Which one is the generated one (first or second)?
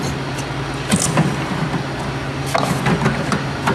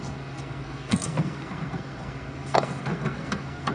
second